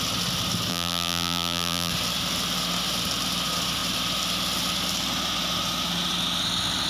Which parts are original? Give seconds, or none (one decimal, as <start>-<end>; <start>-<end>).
0.0-0.7; 1.9-6.9